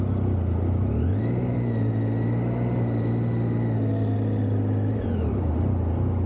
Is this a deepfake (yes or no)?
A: no